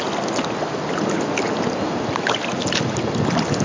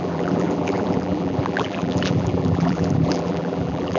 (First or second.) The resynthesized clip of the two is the second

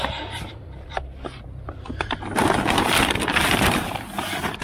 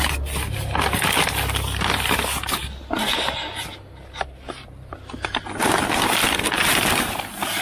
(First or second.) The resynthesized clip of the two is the first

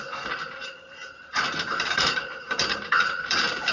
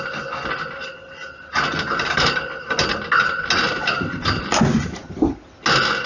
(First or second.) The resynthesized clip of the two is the first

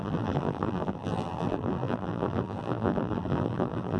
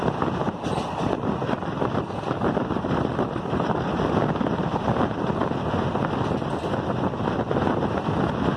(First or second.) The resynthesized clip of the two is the first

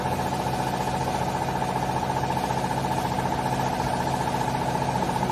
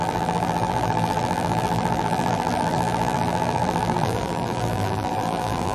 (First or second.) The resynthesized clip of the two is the second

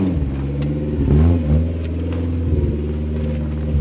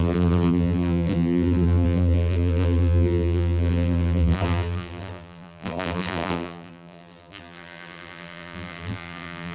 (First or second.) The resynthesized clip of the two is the second